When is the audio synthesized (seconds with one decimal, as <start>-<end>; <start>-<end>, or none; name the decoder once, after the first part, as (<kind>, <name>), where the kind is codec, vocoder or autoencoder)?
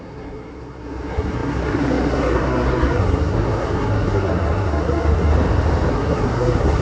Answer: 0.0-5.3 (codec, SNAC); 5.9-6.8